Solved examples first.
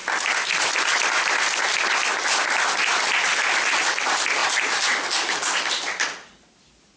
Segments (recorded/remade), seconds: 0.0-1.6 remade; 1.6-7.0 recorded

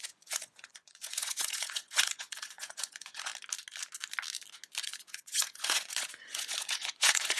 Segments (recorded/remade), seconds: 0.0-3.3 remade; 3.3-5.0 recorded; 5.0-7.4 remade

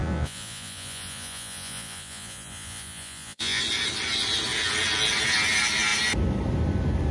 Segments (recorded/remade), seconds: 0.0-3.6 remade; 3.6-7.1 recorded

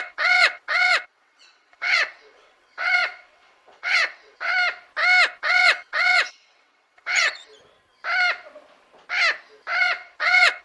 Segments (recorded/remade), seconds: 0.0-4.5 remade; 4.5-5.4 recorded; 5.4-7.5 remade; 7.5-9.8 recorded; 9.8-10.6 remade

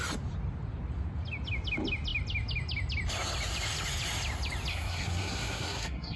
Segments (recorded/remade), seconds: 0.0-4.7 recorded; 4.7-6.2 remade